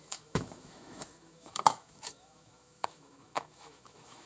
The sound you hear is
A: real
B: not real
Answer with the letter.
B